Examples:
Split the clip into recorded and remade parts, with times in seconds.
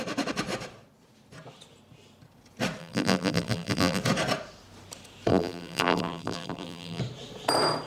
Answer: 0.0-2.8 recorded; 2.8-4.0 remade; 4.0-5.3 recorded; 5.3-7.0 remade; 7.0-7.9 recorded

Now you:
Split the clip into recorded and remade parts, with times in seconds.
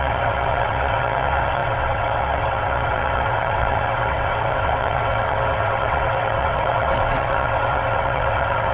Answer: 0.0-8.7 remade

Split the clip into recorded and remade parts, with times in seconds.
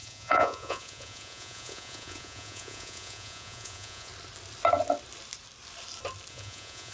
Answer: 0.0-4.1 remade; 4.1-6.3 recorded; 6.3-6.9 remade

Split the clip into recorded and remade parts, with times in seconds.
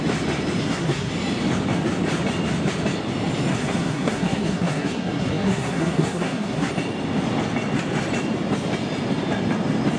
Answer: 0.0-0.6 recorded; 0.6-1.1 remade; 1.1-3.5 recorded; 3.5-6.7 remade; 6.7-10.0 recorded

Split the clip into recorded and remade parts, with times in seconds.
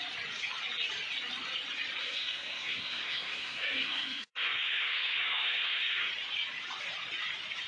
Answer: 0.0-2.0 recorded; 2.0-6.1 remade; 6.1-7.7 recorded